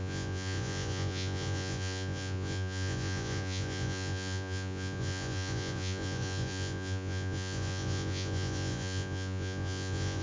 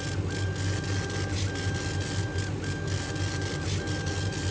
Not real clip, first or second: first